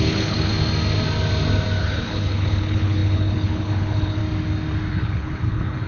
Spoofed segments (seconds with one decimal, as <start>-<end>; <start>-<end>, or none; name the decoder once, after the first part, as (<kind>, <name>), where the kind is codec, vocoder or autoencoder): 0.0-0.5 (codec, HILCodec); 1.8-4.2; 4.9-5.9